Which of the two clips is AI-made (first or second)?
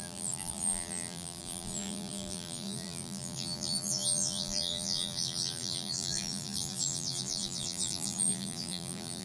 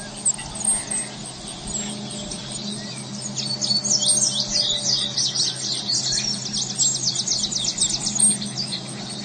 first